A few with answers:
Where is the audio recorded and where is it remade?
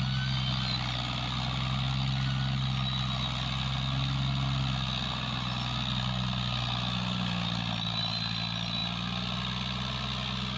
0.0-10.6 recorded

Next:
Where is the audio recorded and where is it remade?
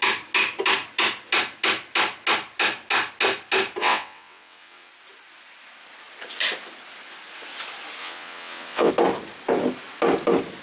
0.0-3.8 recorded; 3.8-4.9 remade; 4.9-8.0 recorded; 8.0-8.9 remade; 8.9-10.6 recorded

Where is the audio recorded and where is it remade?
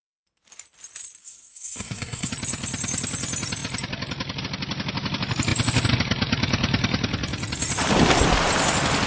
0.0-1.2 recorded; 1.2-2.3 remade; 2.3-9.1 recorded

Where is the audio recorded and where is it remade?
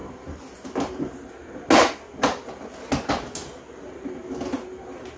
0.0-5.2 recorded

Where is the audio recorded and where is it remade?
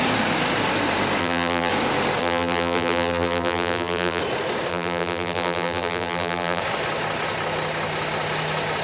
0.0-1.2 recorded; 1.2-1.7 remade; 1.7-2.2 recorded; 2.2-4.2 remade; 4.2-4.7 recorded; 4.7-6.6 remade; 6.6-8.8 recorded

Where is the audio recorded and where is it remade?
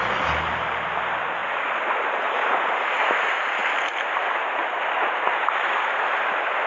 0.0-6.7 recorded